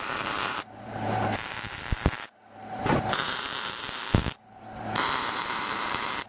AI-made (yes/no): yes